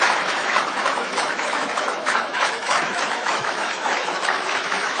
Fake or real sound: fake